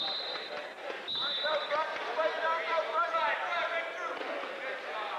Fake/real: real